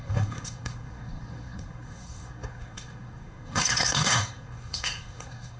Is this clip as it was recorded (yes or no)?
no